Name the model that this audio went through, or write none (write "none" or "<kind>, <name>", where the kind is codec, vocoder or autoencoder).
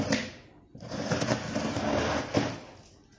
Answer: none